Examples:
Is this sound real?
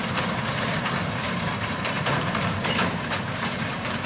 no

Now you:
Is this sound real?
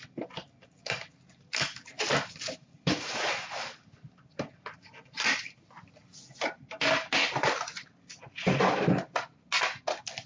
yes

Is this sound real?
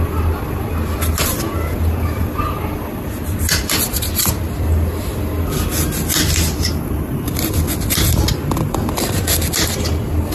yes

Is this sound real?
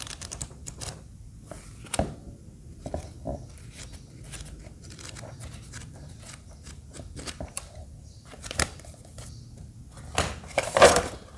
no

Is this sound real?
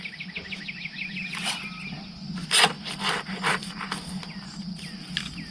yes